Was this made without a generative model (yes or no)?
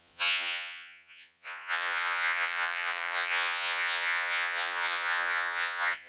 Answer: no